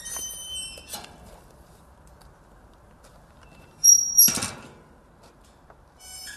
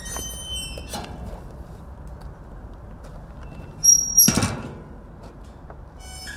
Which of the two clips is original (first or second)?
second